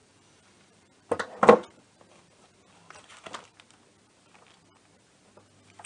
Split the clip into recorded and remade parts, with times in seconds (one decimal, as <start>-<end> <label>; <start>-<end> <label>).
0.0-3.5 remade; 3.5-5.9 recorded